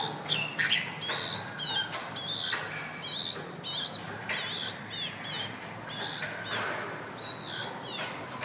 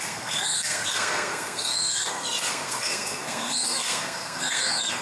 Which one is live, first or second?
first